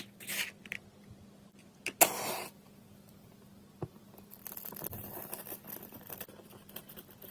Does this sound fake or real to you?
real